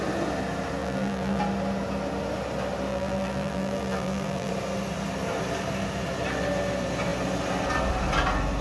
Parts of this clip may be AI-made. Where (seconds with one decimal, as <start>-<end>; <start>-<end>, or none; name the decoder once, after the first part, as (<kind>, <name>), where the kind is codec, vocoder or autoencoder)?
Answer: 0.8-1.4 (vocoder, BigVGAN v2); 2.9-4.5